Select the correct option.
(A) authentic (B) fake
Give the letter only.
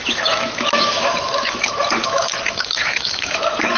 B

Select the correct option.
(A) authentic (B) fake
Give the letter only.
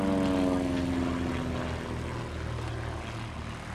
A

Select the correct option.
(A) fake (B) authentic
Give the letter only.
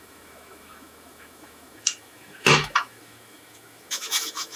A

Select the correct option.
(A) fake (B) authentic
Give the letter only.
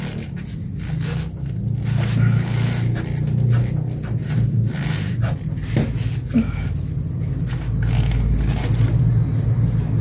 B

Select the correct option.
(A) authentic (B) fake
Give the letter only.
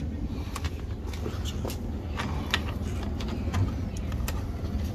A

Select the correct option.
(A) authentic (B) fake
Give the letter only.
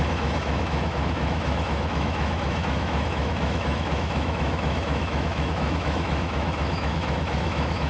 B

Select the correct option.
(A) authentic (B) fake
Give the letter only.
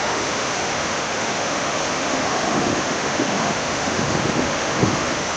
B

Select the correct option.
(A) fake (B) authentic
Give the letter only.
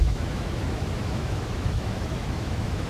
A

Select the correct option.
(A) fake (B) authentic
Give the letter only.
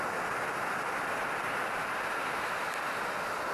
B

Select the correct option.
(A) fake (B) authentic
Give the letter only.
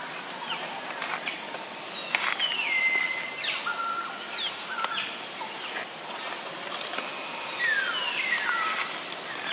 B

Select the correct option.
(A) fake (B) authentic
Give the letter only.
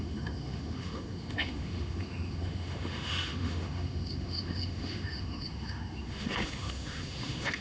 A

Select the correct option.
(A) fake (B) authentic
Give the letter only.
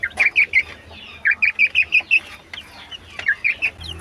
B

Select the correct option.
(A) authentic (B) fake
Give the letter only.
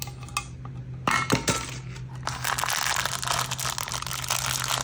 A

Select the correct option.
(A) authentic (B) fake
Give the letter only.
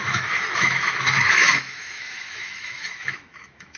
B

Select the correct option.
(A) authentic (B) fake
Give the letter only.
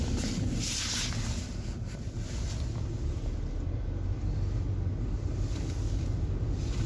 A